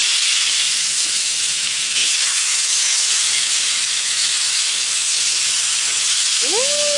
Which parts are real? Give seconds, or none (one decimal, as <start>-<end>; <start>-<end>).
none